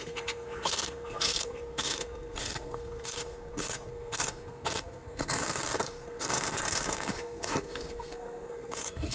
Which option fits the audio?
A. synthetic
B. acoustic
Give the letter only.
A